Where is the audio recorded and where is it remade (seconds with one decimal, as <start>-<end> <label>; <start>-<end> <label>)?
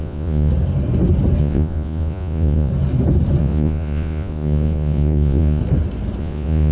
0.0-0.5 remade; 0.5-1.4 recorded; 1.4-2.7 remade; 2.7-3.4 recorded; 3.4-5.6 remade; 5.6-6.2 recorded; 6.2-6.7 remade